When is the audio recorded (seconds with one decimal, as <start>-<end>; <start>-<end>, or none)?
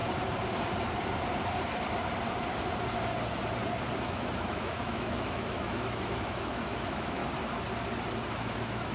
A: 0.0-4.0; 7.2-8.3